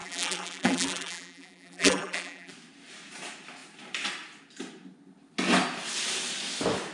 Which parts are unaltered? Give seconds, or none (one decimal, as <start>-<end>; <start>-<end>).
2.5-6.9

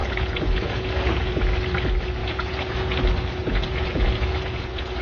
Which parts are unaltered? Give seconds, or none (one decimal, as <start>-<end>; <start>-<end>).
1.3-2.2; 3.0-3.4